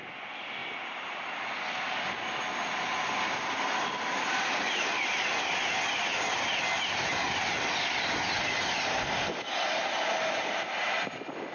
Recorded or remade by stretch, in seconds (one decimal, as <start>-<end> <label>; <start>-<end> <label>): 0.0-11.5 recorded